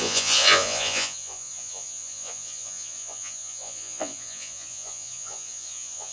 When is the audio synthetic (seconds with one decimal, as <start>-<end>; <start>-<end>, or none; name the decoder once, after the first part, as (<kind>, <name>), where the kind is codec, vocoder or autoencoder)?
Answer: 0.0-6.1 (vocoder, Vocos)